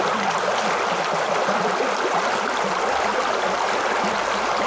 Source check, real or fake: real